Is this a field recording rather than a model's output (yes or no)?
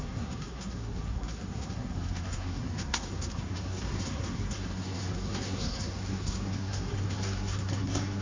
no